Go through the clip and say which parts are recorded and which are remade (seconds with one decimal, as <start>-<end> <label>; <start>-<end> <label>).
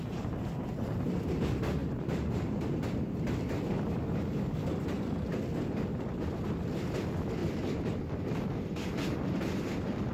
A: 0.0-10.1 remade